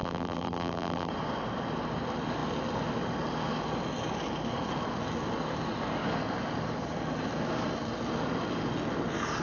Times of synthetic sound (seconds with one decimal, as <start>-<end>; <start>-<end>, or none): 0.0-1.1